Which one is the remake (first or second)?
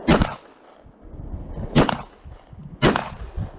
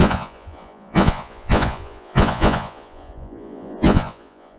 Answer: second